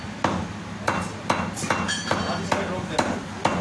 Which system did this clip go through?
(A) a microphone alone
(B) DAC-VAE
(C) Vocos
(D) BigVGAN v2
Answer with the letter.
A